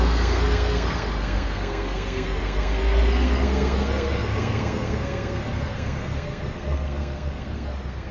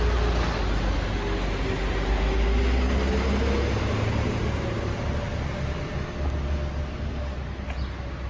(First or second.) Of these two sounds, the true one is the second